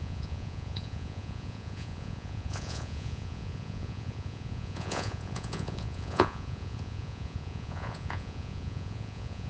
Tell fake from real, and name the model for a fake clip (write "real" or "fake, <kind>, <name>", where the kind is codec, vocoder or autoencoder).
fake, vocoder, Vocos